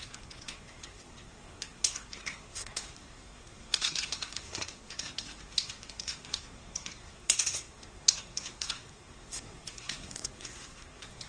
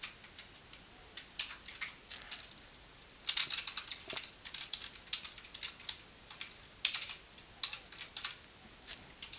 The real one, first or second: second